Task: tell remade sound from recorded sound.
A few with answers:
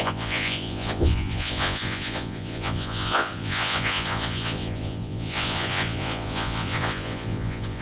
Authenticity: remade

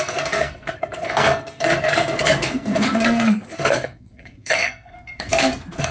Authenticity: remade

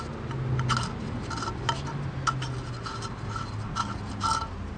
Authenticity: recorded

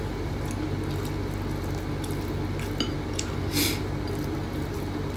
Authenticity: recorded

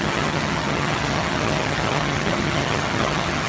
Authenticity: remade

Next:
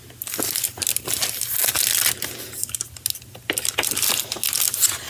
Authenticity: recorded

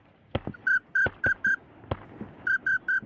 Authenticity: recorded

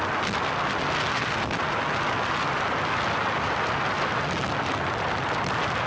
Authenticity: recorded